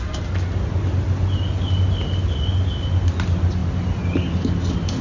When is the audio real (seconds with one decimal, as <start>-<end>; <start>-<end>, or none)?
0.0-5.0